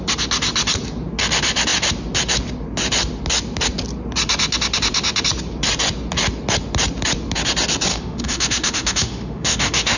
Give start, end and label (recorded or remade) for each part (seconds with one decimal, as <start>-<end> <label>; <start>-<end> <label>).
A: 0.0-7.9 recorded; 7.9-10.0 remade